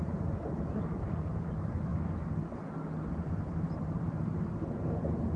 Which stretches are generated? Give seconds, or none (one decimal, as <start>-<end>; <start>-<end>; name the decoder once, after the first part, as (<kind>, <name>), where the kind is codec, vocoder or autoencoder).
0.0-1.9 (vocoder, BigVGAN v2); 3.1-5.4